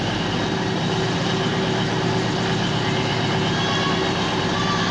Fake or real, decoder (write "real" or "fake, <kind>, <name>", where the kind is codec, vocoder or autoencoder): real